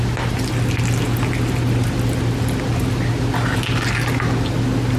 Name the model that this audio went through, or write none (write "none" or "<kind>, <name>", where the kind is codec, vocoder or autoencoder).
none